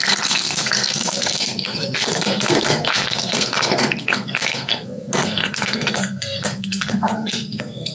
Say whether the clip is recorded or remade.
remade